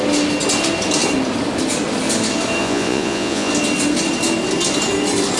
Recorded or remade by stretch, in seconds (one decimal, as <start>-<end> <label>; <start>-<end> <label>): 0.0-2.6 recorded; 2.6-3.5 remade; 3.5-5.4 recorded